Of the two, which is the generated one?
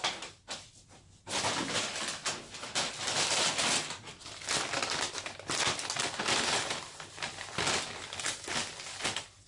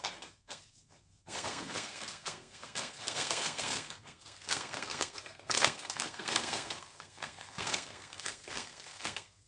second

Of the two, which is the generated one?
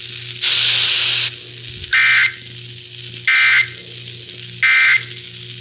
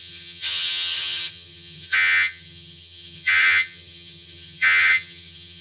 second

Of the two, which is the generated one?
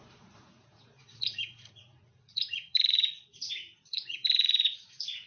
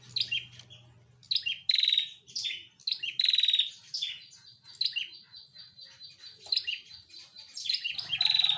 first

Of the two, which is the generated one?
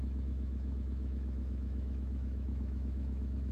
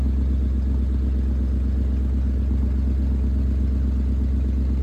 first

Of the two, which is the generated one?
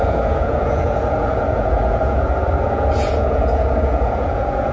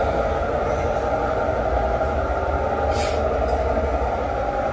first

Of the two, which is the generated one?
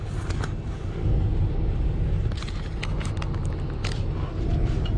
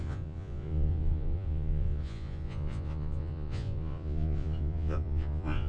second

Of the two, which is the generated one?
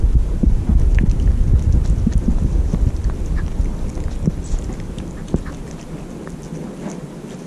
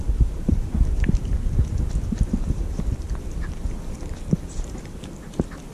second